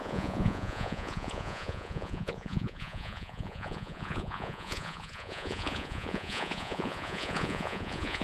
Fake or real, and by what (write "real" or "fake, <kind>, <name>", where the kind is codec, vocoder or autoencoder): fake, vocoder, Vocos